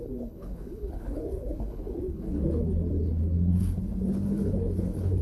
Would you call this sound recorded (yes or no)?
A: no